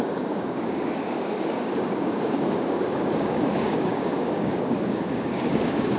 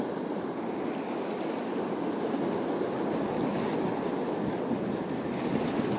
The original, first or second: second